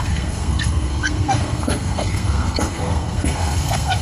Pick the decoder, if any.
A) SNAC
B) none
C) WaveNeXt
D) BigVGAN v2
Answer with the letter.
A